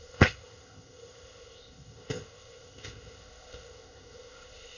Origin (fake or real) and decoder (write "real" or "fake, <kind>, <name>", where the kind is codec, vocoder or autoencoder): fake, codec, ZipCodec